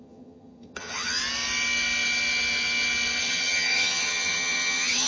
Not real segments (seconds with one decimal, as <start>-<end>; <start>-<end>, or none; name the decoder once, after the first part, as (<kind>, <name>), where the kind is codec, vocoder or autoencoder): 0.0-1.2 (vocoder, HiFi-GAN); 3.2-5.1